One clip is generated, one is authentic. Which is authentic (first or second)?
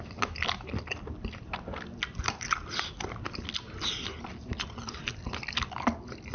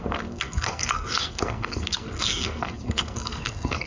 first